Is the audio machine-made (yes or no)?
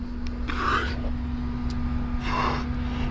no